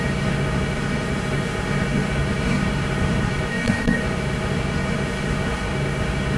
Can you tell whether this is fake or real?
fake